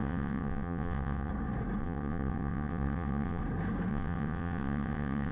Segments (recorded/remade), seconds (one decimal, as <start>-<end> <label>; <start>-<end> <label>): 0.0-1.3 remade; 1.3-1.8 recorded; 1.8-3.4 remade; 3.4-3.9 recorded; 3.9-5.3 remade